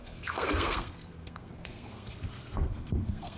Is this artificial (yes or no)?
yes